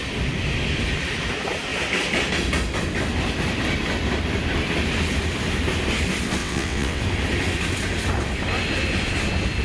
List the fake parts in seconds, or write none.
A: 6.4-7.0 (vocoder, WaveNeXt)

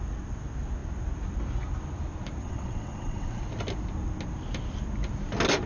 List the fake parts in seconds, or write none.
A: 2.4-3.4 (vocoder, WaveNeXt)

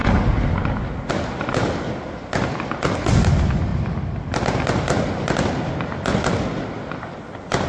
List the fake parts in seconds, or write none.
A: none

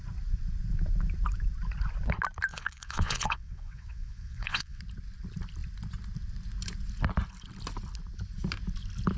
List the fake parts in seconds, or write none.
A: 2.5-4.8 (vocoder, WaveNeXt)

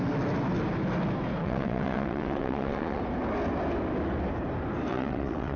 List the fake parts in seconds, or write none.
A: 1.4-3.0 (vocoder, WaveNeXt); 4.9-5.6

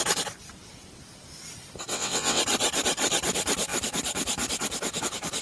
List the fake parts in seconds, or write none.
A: 1.9-2.4 (vocoder, WaveNeXt)